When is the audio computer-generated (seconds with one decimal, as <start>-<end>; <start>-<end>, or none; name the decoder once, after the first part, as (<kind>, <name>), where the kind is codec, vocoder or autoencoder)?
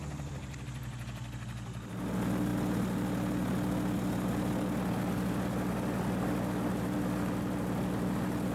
none